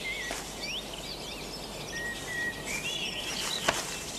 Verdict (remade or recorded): recorded